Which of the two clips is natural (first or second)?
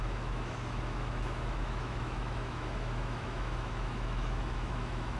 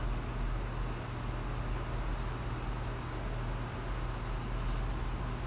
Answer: second